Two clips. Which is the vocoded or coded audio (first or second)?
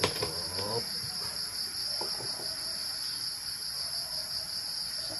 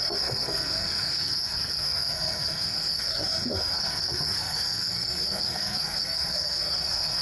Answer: second